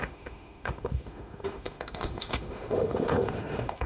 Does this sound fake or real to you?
fake